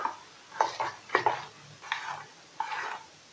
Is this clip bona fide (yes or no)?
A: yes